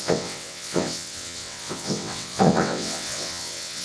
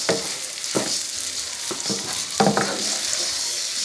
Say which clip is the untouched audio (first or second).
second